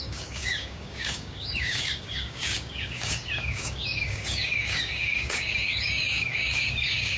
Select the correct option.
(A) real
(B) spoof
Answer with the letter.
B